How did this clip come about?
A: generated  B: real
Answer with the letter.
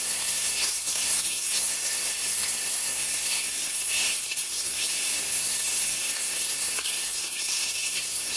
A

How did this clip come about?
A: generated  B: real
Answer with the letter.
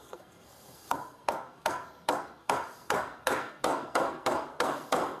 A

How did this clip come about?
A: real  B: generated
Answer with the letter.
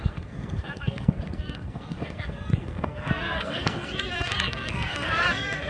B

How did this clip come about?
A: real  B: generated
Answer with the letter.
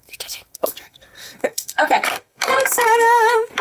B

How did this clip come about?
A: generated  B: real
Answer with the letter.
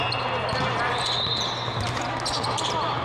B